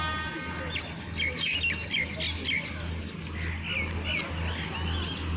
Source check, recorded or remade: recorded